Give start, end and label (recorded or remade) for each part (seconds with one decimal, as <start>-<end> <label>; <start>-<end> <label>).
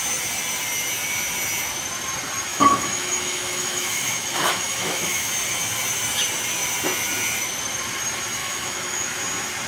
0.0-2.5 recorded; 2.5-5.3 remade; 5.3-8.4 recorded; 8.4-9.2 remade; 9.2-9.7 recorded